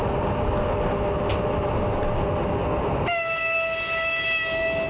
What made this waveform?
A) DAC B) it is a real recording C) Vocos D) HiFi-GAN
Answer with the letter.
B